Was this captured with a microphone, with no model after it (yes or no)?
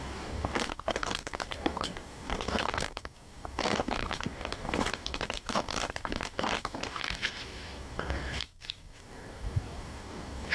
no